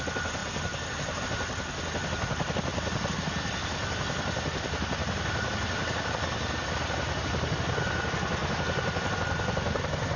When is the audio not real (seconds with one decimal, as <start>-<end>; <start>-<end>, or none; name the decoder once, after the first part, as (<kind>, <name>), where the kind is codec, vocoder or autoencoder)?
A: none